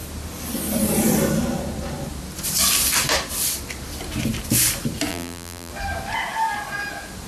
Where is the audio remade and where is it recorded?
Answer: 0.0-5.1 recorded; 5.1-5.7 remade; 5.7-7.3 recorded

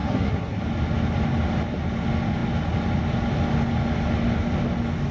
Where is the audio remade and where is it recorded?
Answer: 0.0-0.6 remade; 0.6-5.1 recorded

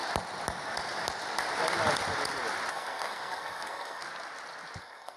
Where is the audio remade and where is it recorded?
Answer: 0.0-2.7 recorded; 2.7-4.0 remade; 4.0-4.8 recorded; 4.8-5.2 remade

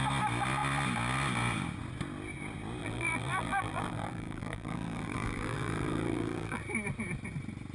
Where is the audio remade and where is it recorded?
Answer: 0.0-2.8 recorded; 2.8-6.6 remade; 6.6-7.7 recorded

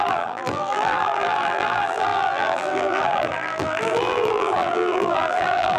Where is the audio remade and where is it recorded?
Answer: 0.0-5.8 remade

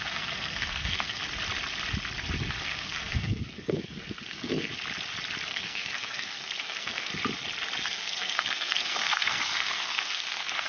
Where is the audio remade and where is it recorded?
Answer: 0.0-1.2 remade; 1.2-2.6 recorded; 2.6-4.7 remade; 4.7-5.5 recorded; 5.5-7.1 remade; 7.1-7.8 recorded; 7.8-10.7 remade

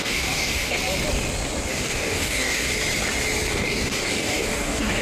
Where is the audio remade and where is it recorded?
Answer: 0.0-0.8 remade; 0.8-1.7 recorded; 1.7-2.7 remade; 2.7-3.5 recorded; 3.5-5.0 remade

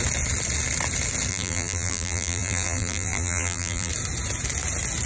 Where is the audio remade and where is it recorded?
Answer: 0.0-1.3 recorded; 1.3-3.9 remade; 3.9-5.1 recorded